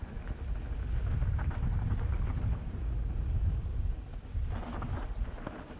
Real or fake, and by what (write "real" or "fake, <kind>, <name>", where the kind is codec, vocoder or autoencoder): real